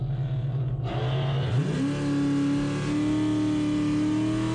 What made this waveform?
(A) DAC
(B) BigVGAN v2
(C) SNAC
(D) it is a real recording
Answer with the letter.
D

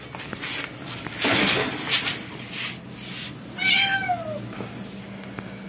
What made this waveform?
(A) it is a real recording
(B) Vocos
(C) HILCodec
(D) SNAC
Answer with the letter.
A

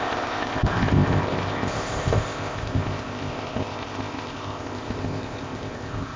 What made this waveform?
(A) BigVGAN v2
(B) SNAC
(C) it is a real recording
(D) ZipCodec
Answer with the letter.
D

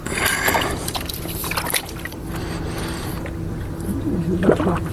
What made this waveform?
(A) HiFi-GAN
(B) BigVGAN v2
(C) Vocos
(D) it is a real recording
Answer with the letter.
B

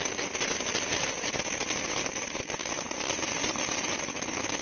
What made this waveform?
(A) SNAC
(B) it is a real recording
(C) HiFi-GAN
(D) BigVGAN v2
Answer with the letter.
B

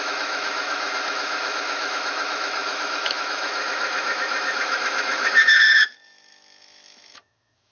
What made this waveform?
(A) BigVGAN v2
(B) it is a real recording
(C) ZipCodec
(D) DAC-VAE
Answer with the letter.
D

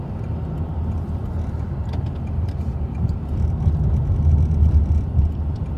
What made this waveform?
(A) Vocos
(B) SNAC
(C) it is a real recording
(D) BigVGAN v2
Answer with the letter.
C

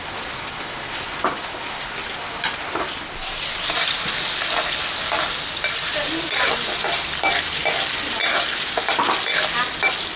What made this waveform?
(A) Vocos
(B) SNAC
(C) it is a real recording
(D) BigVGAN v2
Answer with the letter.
C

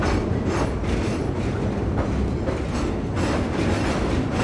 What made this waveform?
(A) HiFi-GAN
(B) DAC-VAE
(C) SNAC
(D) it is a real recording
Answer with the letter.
D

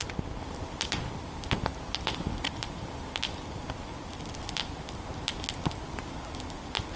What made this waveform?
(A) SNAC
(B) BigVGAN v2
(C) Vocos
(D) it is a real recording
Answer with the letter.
D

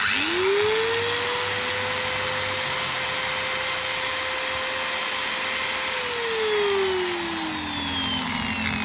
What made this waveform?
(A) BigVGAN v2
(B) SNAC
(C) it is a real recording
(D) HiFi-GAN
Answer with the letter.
C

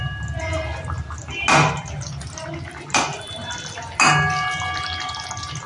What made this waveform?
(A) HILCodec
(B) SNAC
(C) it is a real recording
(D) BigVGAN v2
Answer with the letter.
C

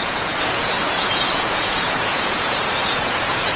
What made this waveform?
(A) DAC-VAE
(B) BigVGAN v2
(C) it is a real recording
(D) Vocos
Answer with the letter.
D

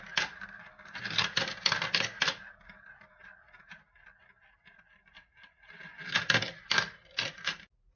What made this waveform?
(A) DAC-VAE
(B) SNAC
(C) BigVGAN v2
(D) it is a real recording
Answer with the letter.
D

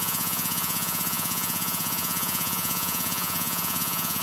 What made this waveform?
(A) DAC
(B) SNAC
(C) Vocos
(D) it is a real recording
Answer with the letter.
C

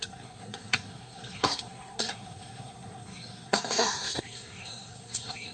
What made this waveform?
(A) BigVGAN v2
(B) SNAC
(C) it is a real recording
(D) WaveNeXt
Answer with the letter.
B